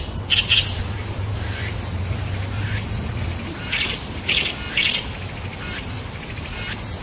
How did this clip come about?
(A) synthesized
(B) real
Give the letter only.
B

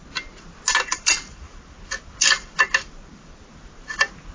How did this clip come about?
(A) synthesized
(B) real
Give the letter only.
B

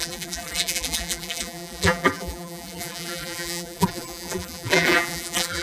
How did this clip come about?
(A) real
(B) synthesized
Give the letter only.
B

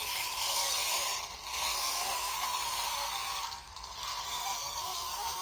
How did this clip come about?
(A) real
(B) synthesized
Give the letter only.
B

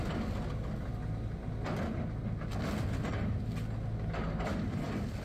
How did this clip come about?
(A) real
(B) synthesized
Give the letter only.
A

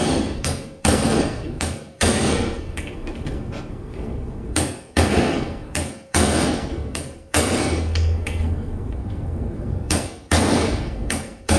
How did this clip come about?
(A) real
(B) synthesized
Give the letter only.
B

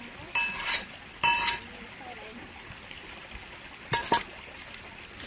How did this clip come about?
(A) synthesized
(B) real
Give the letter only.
B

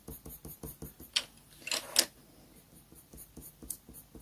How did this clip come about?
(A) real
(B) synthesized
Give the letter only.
A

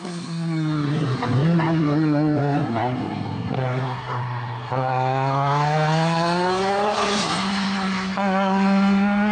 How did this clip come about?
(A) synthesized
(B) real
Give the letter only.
A